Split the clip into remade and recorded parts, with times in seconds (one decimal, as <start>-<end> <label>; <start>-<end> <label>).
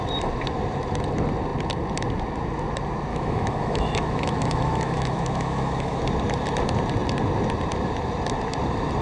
0.0-3.1 recorded; 3.1-6.0 remade; 6.0-9.0 recorded